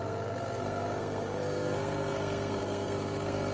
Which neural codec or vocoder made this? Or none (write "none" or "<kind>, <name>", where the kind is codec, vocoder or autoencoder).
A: codec, SNAC